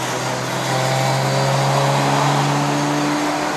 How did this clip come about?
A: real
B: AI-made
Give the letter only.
A